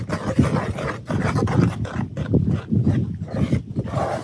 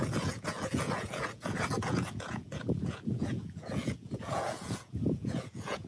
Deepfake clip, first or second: second